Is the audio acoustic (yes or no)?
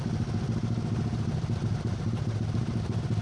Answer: yes